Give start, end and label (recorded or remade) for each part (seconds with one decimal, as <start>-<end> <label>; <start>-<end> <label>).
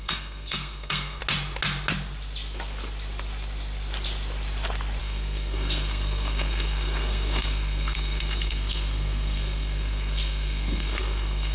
0.0-1.2 remade; 1.2-5.0 recorded; 5.0-11.5 remade